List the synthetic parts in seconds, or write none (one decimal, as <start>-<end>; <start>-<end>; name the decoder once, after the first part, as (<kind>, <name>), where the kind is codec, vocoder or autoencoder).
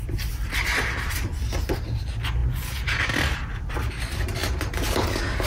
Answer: none